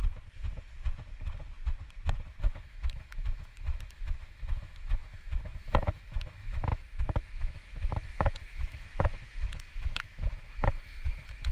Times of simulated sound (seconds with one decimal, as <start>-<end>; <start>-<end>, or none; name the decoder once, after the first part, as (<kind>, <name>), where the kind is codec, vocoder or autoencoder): 2.4-11.5 (autoencoder, DAC-VAE)

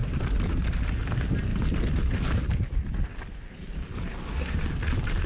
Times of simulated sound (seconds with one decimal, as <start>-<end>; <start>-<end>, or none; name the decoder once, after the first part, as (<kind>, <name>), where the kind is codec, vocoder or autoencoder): none

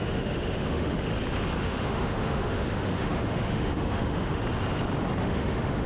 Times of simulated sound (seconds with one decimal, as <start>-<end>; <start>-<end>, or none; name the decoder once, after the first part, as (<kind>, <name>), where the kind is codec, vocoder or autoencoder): 0.0-1.1 (autoencoder, DAC-VAE); 1.6-4.4; 5.2-5.9

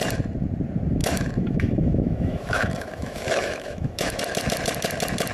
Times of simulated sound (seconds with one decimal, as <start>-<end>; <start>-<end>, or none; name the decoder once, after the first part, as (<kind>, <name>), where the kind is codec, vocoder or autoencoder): 1.0-4.2 (autoencoder, DAC-VAE)

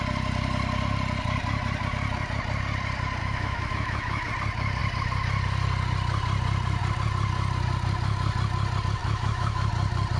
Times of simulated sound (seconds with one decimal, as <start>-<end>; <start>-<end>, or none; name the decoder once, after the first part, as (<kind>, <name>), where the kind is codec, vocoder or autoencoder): 3.2-4.3 (autoencoder, DAC-VAE); 9.0-9.7

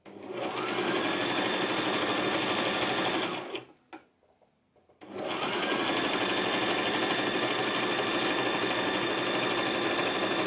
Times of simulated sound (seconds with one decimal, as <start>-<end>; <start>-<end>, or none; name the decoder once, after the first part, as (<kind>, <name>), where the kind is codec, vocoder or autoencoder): none